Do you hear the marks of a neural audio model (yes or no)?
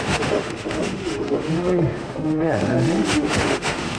yes